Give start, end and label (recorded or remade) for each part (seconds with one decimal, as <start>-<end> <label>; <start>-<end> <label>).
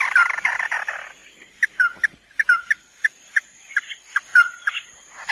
0.0-4.3 remade; 4.3-5.3 recorded